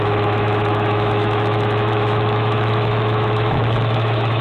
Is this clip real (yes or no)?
no